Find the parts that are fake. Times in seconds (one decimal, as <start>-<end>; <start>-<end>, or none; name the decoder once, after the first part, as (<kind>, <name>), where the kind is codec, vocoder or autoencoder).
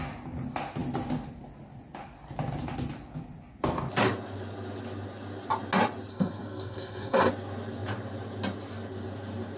6.1-7.3 (codec, SNAC)